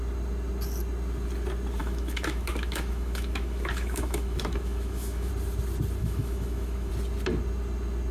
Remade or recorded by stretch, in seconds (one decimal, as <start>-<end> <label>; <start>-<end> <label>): 0.0-1.8 recorded; 1.8-5.3 remade; 5.3-6.0 recorded; 6.0-6.9 remade; 6.9-8.1 recorded